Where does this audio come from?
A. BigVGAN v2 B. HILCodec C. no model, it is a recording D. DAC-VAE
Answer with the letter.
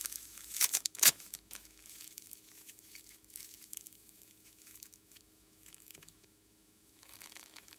D